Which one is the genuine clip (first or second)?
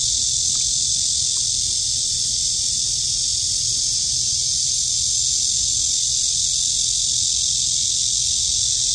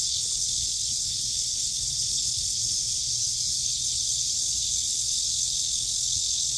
first